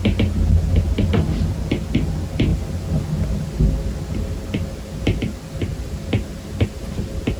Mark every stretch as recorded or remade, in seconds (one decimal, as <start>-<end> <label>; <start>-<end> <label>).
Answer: 0.0-7.4 recorded

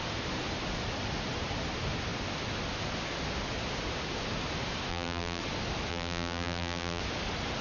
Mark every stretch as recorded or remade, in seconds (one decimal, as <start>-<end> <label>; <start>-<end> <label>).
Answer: 0.0-4.9 recorded; 4.9-5.4 remade; 5.4-5.9 recorded; 5.9-7.0 remade; 7.0-7.6 recorded

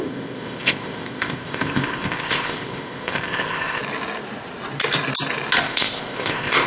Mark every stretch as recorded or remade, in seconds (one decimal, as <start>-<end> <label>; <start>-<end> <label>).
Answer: 0.0-3.8 remade; 3.8-5.6 recorded; 5.6-6.7 remade

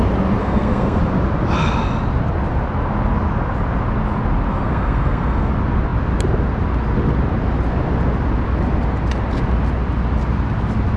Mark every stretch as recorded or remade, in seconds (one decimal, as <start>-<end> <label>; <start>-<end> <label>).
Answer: 0.0-0.4 recorded; 0.4-1.0 remade; 1.0-4.5 recorded; 4.5-5.5 remade; 5.5-11.0 recorded

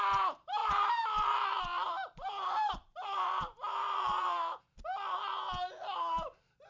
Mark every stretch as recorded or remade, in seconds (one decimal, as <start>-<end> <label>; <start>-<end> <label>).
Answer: 0.0-0.6 recorded; 0.6-4.6 remade; 4.6-6.7 recorded

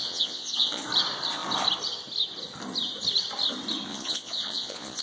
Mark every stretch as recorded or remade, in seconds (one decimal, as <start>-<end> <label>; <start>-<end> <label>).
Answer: 0.0-0.8 remade; 0.8-3.9 recorded; 3.9-5.0 remade